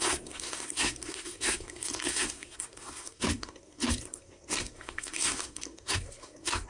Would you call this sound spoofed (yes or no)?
yes